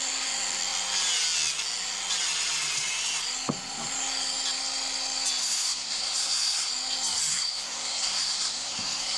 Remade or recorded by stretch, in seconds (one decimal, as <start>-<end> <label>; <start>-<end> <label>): 0.0-5.4 recorded; 5.4-6.7 remade; 6.7-7.3 recorded; 7.3-9.2 remade